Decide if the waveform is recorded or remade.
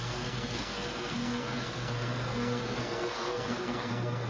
remade